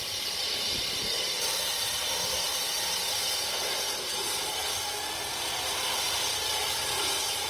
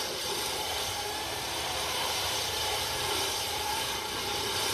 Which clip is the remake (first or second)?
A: second